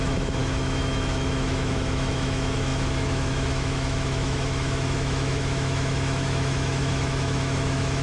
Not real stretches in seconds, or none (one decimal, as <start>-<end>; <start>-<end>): 0.0-8.0